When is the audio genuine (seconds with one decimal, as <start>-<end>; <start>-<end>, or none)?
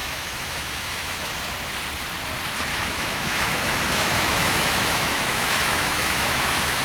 1.5-2.7